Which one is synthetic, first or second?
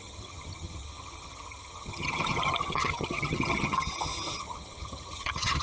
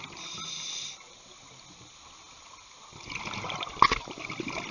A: first